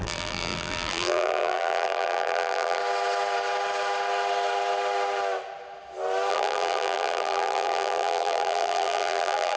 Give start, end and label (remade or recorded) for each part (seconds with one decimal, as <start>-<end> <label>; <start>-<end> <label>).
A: 0.0-2.8 remade; 2.8-6.3 recorded; 6.3-9.6 remade